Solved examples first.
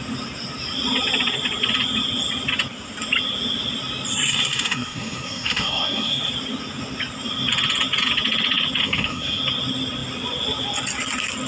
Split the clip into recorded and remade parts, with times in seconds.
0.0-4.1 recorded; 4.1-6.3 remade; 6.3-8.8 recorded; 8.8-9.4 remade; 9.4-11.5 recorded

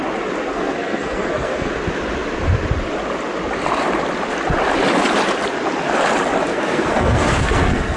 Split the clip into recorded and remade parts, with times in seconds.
0.0-0.4 recorded; 0.4-1.7 remade; 1.7-6.5 recorded; 6.5-8.0 remade

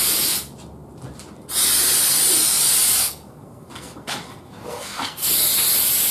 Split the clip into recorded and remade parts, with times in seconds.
0.0-3.0 recorded; 3.0-5.3 remade; 5.3-6.1 recorded

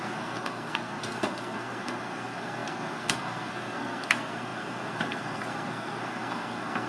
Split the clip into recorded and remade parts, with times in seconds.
0.0-6.9 remade